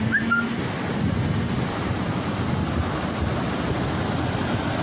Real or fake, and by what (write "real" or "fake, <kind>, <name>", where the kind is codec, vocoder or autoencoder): fake, vocoder, BigVGAN v2